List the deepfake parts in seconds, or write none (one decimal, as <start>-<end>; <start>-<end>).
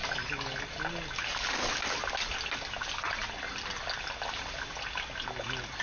none